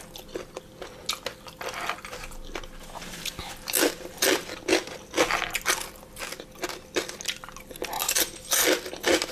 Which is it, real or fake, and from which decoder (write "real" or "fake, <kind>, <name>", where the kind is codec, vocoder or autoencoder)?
real